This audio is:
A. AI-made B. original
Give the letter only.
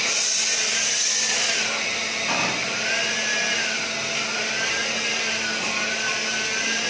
B